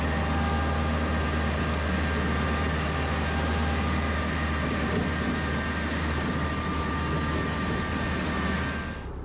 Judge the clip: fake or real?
real